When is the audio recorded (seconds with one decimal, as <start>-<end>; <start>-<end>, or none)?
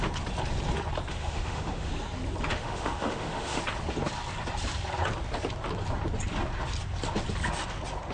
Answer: 0.0-1.1; 1.9-2.5; 3.6-8.1